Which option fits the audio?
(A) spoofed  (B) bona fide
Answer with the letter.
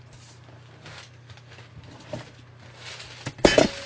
B